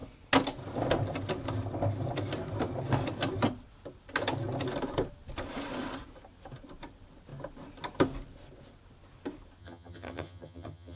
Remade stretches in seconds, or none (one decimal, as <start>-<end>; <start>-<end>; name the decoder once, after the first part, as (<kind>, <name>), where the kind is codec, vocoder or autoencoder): 9.6-11.0 (vocoder, HiFi-GAN)